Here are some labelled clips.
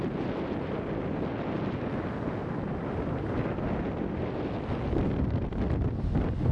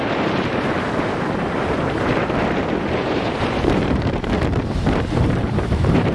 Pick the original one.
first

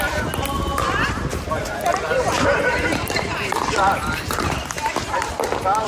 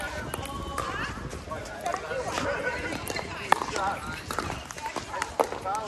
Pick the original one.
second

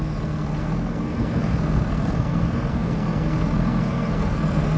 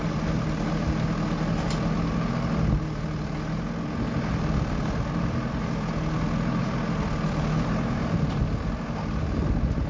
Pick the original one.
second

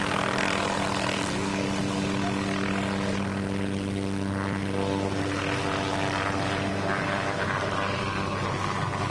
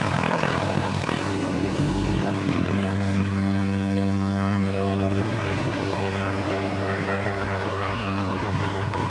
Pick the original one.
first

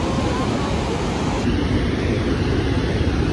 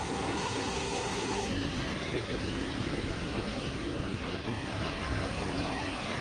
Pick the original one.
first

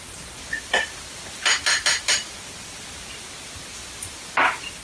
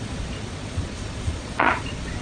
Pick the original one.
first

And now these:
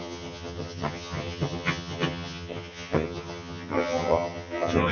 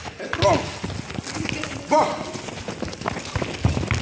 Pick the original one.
second